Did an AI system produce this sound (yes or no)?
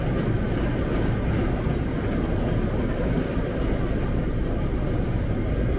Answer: no